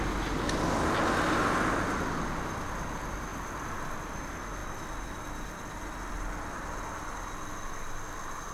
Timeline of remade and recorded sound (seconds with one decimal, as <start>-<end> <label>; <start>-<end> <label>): 0.0-8.5 recorded